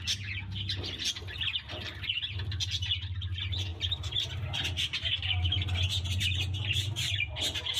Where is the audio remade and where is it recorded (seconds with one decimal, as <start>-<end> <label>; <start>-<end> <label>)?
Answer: 0.0-3.7 recorded; 3.7-7.3 remade; 7.3-7.8 recorded